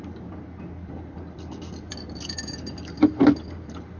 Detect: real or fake real